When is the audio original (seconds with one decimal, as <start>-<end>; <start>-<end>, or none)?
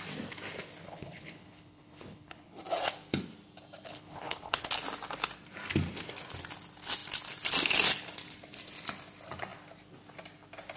0.0-0.8; 2.6-3.9; 4.7-10.8